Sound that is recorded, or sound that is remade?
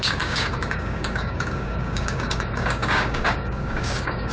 remade